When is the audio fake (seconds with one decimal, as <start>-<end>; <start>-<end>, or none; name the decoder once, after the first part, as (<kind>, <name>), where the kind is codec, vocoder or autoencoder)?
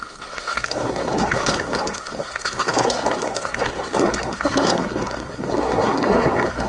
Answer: 0.0-6.7 (codec, SNAC)